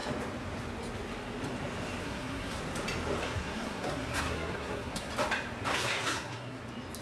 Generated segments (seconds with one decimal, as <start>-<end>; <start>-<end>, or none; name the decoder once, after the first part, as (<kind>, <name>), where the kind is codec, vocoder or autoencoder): 2.0-2.6 (codec, SNAC); 3.2-5.1; 5.7-6.6